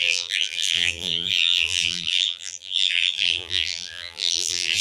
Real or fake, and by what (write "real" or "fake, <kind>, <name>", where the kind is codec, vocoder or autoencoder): fake, vocoder, BigVGAN v2